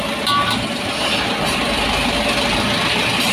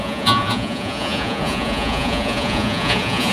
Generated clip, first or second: second